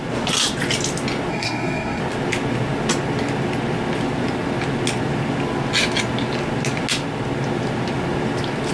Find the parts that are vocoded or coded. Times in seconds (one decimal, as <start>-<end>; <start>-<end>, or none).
1.3-2.0